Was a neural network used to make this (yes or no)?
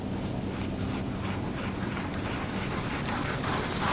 no